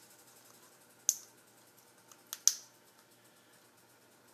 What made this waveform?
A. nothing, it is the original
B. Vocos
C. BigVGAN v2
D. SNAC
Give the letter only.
A